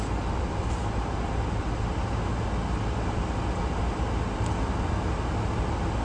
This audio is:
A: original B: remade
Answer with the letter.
A